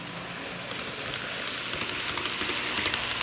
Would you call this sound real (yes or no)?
yes